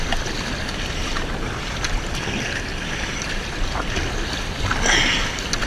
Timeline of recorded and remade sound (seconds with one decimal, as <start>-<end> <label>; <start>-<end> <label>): 0.0-2.7 recorded; 2.7-3.7 remade; 3.7-5.7 recorded